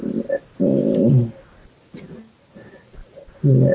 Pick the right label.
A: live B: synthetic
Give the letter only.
A